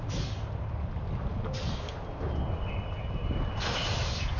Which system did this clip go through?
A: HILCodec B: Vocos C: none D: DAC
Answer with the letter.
C